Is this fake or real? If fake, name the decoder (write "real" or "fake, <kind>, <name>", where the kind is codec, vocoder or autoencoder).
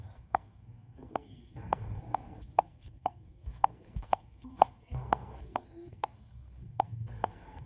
fake, codec, SNAC